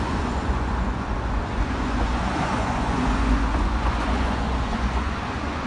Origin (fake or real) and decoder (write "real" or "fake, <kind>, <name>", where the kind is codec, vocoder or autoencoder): fake, vocoder, Vocos